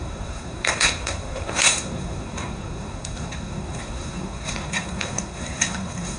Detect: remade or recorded remade